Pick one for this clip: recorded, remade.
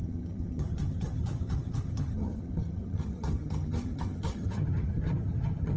remade